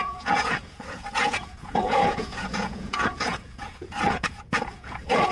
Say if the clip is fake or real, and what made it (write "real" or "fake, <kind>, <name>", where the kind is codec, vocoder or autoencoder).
fake, vocoder, Vocos